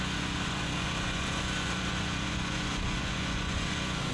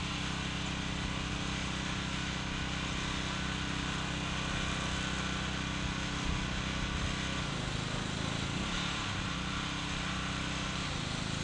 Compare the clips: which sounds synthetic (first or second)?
first